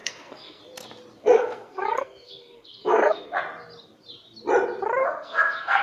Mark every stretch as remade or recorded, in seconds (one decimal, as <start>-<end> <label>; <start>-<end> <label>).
0.0-0.6 remade; 0.6-1.2 recorded; 1.2-3.4 remade; 3.4-5.0 recorded; 5.0-5.8 remade